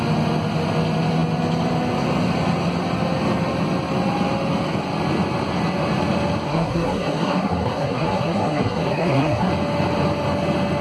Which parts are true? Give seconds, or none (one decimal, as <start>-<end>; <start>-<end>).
0.0-6.5; 9.5-10.8